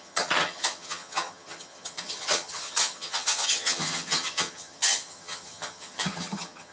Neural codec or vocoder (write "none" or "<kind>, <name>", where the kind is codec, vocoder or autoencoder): vocoder, HiFi-GAN